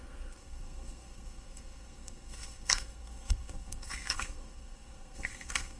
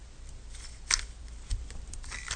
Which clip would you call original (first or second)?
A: second